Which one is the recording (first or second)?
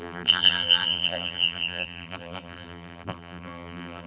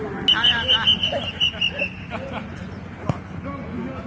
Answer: second